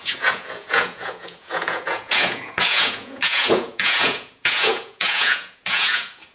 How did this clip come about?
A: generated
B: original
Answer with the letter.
A